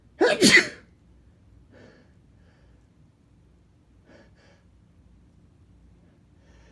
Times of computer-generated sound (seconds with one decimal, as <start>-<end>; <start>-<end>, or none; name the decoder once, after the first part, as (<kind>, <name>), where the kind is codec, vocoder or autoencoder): none